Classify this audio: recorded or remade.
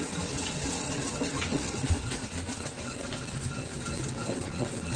remade